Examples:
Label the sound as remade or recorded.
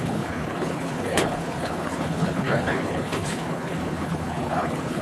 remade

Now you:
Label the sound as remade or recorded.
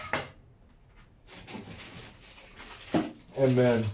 recorded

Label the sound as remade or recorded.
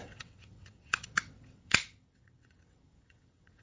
remade